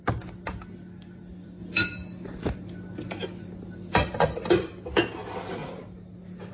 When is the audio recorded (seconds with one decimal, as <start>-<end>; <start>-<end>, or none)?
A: 0.0-6.5